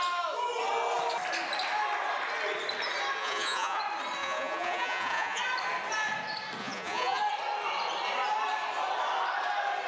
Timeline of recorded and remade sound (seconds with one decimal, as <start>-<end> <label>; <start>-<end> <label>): 0.0-3.2 recorded; 3.2-3.8 remade; 3.8-4.2 recorded; 4.2-5.4 remade; 5.4-6.6 recorded; 6.6-7.2 remade; 7.2-9.9 recorded